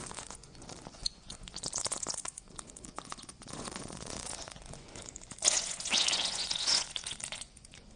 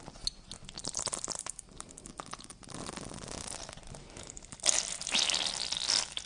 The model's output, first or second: first